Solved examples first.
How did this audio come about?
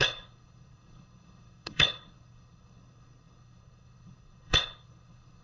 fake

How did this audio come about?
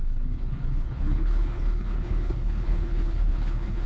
fake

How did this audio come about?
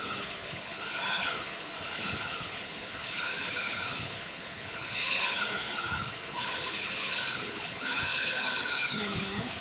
fake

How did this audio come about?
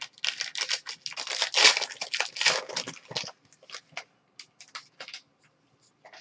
real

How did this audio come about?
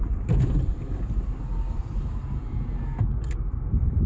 real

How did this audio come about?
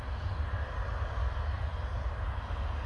real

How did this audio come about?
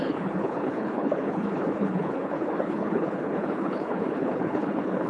fake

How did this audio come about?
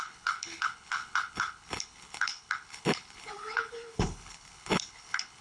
fake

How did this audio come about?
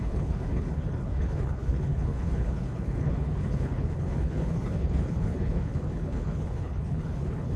fake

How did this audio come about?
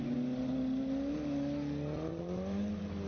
real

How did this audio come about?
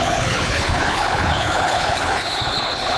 fake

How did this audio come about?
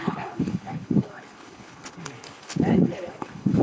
fake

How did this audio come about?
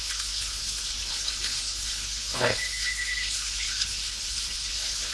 fake